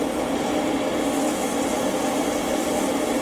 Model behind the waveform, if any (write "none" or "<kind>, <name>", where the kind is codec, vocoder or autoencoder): none